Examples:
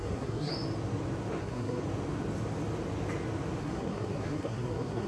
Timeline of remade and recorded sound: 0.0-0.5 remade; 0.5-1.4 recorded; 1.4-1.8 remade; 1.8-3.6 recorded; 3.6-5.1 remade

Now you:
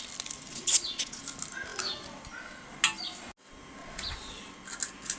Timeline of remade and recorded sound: 0.0-0.5 recorded; 0.5-1.2 remade; 1.2-3.8 recorded; 3.8-4.5 remade; 4.5-5.2 recorded

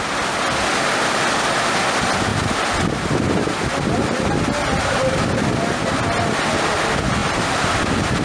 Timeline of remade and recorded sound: 0.0-8.2 recorded

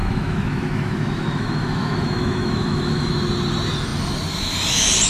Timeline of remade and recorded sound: 0.0-3.1 remade; 3.1-5.1 recorded

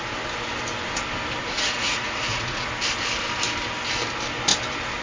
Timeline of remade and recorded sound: 0.0-1.4 recorded; 1.4-2.7 remade; 2.7-5.0 recorded

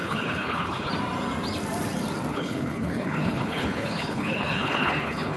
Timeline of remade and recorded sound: 0.0-0.9 remade; 0.9-2.3 recorded; 2.3-5.4 remade

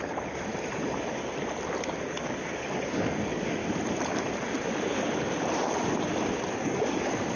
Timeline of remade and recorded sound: 0.0-0.5 remade; 0.5-2.1 recorded; 2.1-3.6 remade; 3.6-6.5 recorded; 6.5-7.4 remade